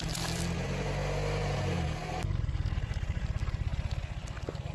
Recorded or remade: recorded